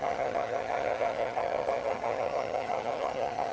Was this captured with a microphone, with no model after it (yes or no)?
no